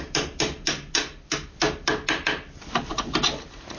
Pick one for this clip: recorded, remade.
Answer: recorded